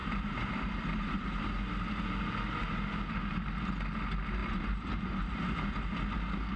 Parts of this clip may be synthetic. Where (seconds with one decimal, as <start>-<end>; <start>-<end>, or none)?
0.0-1.4; 4.4-5.7